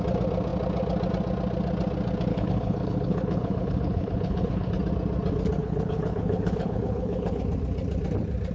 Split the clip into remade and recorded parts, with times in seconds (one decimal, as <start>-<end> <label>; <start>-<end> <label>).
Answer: 0.0-2.3 recorded; 2.3-4.7 remade; 4.7-5.6 recorded; 5.6-7.4 remade; 7.4-8.5 recorded